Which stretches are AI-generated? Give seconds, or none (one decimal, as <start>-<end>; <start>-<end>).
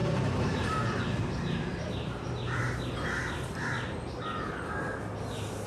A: 0.0-2.6